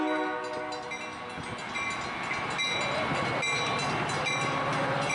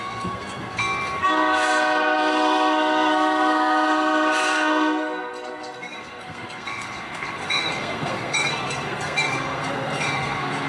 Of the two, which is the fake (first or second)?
second